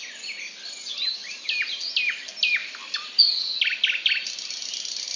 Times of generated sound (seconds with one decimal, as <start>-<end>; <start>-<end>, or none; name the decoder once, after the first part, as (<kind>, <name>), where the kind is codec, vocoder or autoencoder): 1.2-1.8 (vocoder, BigVGAN v2); 2.6-3.2